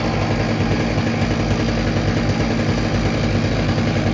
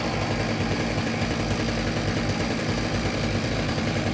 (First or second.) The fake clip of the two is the second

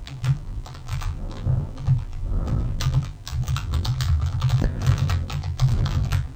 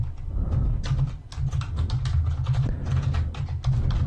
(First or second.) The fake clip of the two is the first